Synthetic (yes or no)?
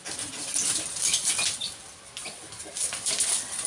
no